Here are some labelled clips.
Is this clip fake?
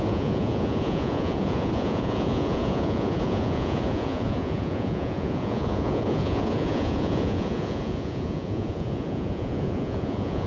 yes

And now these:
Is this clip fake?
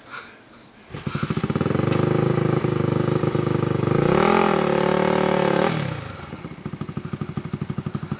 no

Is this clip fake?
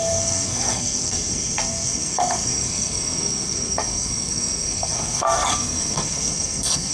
yes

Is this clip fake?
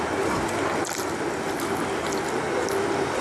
no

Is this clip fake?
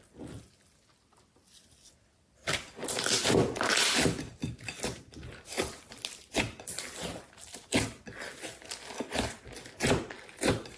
no